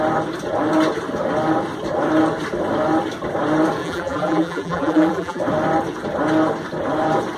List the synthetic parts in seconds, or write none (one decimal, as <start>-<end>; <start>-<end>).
3.8-5.4